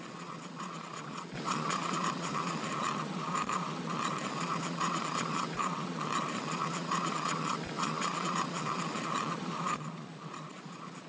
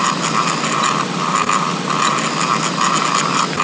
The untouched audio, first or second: second